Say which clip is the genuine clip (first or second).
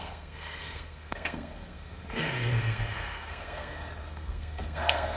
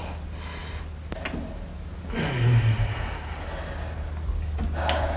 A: second